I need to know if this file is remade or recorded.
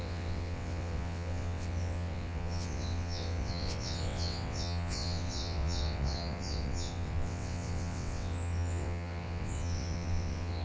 remade